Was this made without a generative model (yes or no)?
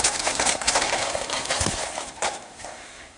no